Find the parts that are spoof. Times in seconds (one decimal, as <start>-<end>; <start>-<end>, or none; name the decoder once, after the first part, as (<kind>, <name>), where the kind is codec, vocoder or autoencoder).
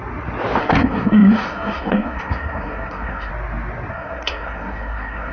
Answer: 0.6-3.3 (codec, SNAC); 3.9-5.3